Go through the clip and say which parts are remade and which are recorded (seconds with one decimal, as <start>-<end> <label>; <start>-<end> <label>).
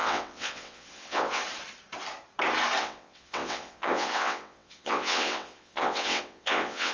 0.0-1.4 remade; 1.4-2.8 recorded; 2.8-6.9 remade